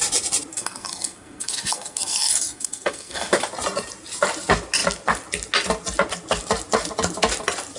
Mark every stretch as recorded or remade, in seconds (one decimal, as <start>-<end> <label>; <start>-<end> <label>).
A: 0.0-0.5 recorded; 0.5-3.3 remade; 3.3-7.8 recorded